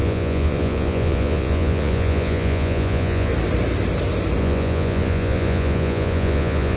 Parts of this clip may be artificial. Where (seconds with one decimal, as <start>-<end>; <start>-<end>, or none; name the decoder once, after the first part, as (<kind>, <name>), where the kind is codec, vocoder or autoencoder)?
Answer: 0.0-3.3 (vocoder, Vocos); 4.4-6.8